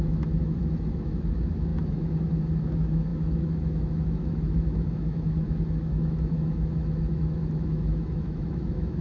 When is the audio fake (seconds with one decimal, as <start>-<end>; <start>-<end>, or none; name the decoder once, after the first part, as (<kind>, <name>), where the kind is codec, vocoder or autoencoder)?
0.0-9.0 (autoencoder, DAC-VAE)